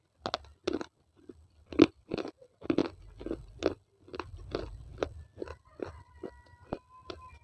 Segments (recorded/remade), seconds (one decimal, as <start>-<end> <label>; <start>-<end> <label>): 0.0-7.4 recorded